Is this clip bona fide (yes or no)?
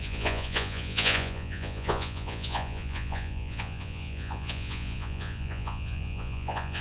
no